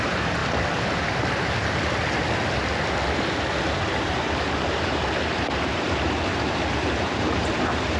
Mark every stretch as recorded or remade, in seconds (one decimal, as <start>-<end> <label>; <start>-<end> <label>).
0.0-0.4 remade; 0.4-3.9 recorded; 3.9-8.0 remade